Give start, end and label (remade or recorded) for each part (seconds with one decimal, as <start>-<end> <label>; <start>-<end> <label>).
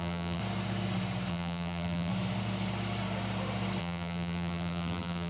0.0-0.4 remade; 0.4-1.3 recorded; 1.3-2.1 remade; 2.1-3.8 recorded; 3.8-5.3 remade